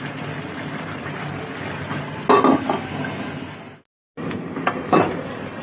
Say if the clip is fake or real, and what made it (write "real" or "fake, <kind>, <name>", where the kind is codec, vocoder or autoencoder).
real